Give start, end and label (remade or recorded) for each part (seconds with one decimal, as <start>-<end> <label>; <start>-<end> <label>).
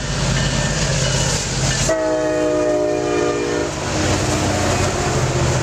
0.0-5.6 recorded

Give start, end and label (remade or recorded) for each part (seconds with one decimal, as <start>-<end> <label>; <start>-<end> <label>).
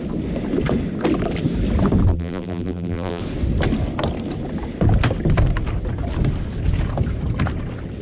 0.0-2.1 recorded; 2.1-3.2 remade; 3.2-8.0 recorded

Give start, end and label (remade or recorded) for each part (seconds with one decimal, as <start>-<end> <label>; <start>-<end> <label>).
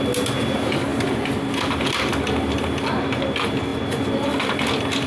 0.0-5.1 recorded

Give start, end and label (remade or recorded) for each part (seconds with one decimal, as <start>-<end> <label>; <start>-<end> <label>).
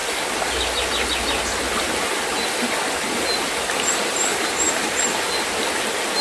0.0-4.3 recorded; 4.3-5.0 remade; 5.0-6.2 recorded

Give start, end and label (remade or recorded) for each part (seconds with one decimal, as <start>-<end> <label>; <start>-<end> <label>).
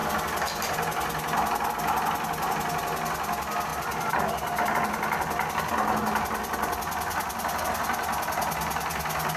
0.0-9.4 recorded